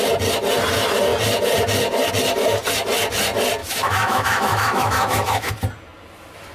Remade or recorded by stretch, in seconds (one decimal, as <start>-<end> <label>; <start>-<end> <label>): 0.0-3.6 recorded; 3.6-5.5 remade; 5.5-6.5 recorded